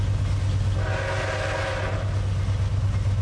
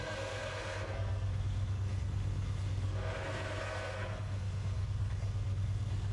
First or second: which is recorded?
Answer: first